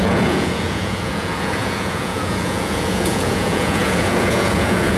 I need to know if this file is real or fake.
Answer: fake